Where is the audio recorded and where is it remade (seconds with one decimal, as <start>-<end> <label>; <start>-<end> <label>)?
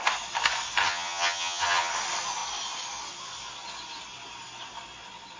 0.0-0.8 recorded; 0.8-1.9 remade; 1.9-5.4 recorded